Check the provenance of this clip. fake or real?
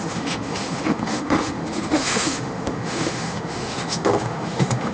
fake